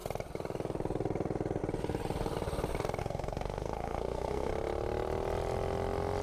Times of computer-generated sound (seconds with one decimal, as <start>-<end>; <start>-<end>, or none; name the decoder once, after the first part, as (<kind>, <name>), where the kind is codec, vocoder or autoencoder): 3.0-4.5 (codec, SNAC)